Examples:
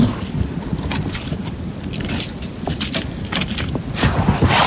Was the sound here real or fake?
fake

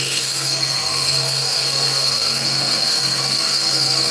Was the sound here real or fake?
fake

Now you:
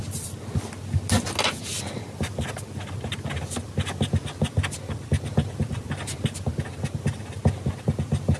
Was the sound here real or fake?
real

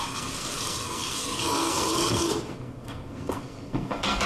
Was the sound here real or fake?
fake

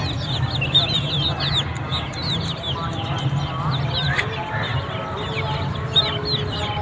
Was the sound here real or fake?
real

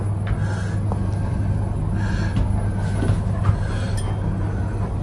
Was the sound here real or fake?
real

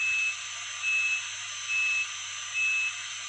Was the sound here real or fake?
real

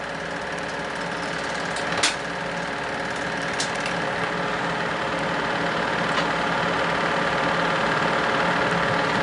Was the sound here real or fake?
real